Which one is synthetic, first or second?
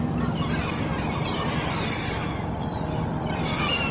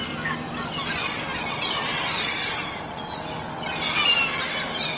first